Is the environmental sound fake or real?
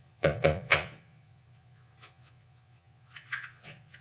fake